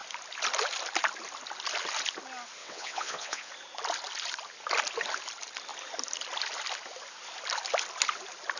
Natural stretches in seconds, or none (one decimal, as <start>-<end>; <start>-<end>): 0.0-2.6; 3.5-8.6